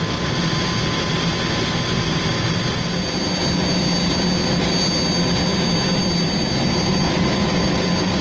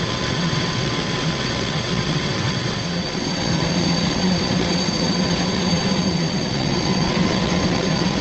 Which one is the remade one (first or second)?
second